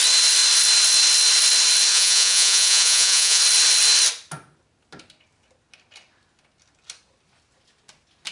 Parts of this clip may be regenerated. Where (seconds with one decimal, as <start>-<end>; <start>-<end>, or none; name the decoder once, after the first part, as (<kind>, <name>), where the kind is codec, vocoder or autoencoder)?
1.9-3.4 (vocoder, Vocos)